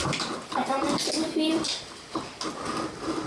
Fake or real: real